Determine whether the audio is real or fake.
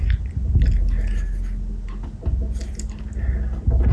real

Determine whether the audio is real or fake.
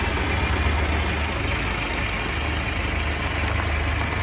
real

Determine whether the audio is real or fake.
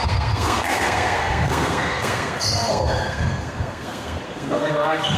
fake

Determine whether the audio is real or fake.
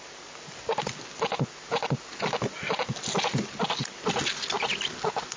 real